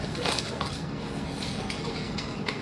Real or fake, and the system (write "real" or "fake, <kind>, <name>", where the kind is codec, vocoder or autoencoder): fake, codec, SNAC